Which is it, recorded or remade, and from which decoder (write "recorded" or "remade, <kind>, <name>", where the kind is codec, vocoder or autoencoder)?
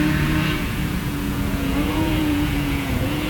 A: remade, vocoder, Vocos